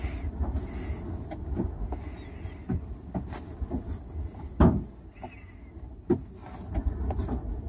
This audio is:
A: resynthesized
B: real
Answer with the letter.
B